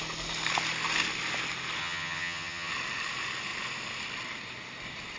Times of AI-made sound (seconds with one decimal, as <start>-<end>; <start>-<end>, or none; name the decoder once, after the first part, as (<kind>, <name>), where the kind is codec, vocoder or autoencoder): 1.8-2.7 (vocoder, HiFi-GAN)